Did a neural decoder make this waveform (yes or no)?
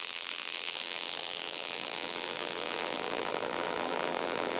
yes